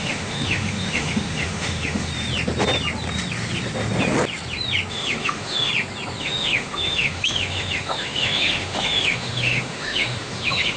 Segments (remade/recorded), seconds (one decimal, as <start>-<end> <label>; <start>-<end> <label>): 0.0-2.1 remade; 2.1-4.9 recorded; 4.9-5.7 remade; 5.7-6.2 recorded; 6.2-10.8 remade